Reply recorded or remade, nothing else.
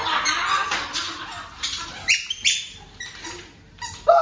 recorded